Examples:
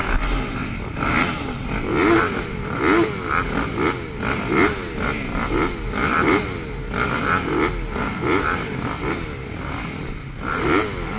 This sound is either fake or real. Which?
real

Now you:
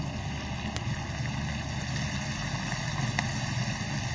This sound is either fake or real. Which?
real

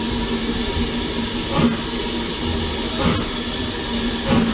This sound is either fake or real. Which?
real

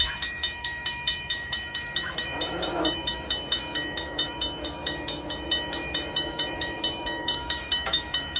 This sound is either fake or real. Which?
fake